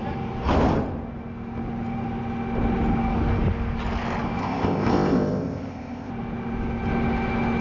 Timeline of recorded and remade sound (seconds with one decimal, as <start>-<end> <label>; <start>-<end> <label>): 0.0-4.4 recorded; 4.4-6.1 remade; 6.1-7.6 recorded